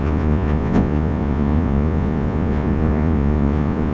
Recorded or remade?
remade